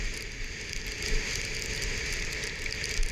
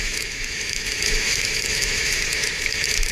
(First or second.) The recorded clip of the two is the first